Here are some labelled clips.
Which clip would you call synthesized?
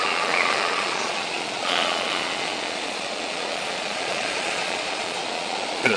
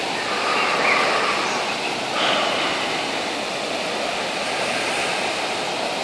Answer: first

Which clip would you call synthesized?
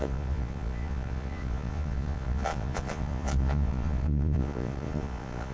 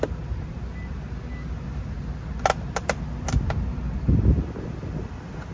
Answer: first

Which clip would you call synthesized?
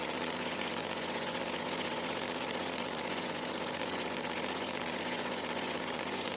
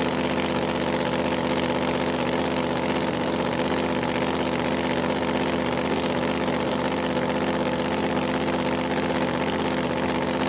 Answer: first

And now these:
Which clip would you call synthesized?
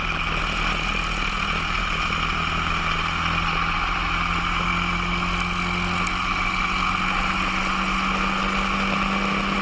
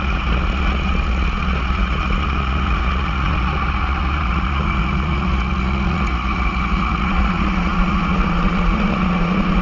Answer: second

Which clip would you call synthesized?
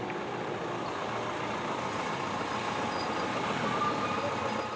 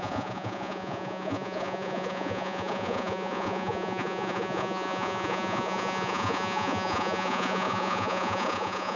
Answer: second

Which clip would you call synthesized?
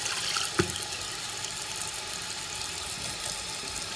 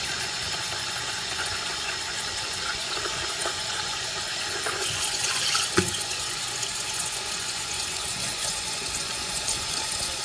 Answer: second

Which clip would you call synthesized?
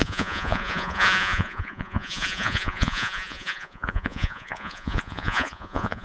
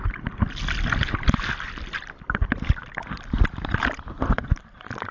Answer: first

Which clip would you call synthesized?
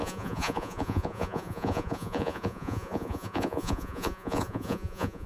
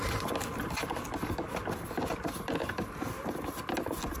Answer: first